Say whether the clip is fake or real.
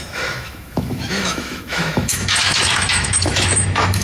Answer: fake